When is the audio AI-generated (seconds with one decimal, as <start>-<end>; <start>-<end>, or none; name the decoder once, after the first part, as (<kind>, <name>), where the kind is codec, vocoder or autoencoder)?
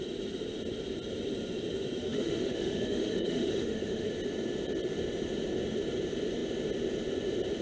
2.0-4.1 (autoencoder, DAC-VAE)